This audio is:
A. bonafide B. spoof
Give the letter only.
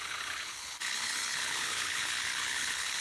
B